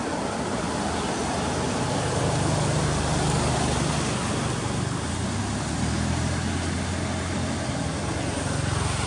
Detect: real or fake real